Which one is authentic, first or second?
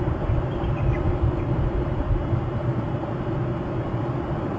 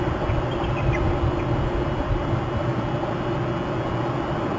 second